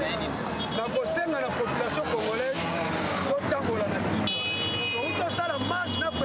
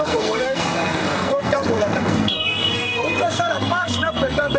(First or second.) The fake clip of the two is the second